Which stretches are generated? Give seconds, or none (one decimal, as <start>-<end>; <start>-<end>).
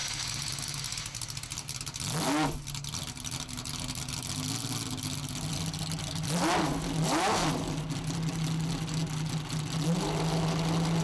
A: none